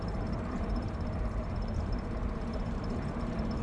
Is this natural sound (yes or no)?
no